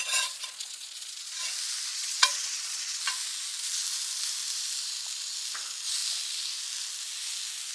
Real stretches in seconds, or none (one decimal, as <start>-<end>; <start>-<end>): 1.4-1.9; 3.0-7.7